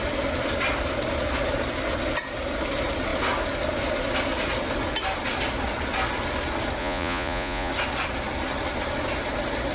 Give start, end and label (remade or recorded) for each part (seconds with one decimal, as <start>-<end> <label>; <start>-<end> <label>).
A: 0.0-6.8 recorded; 6.8-7.7 remade; 7.7-9.7 recorded